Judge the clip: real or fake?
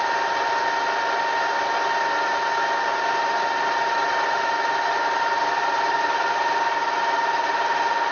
real